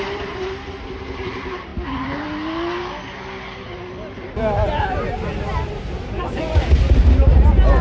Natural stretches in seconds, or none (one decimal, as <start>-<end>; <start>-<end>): 0.0-7.8